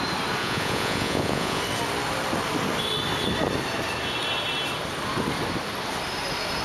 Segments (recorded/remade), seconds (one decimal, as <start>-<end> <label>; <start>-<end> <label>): 0.0-0.4 recorded; 0.4-1.6 remade; 1.6-6.6 recorded